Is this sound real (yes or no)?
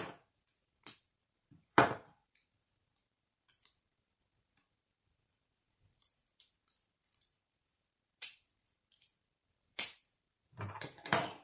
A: no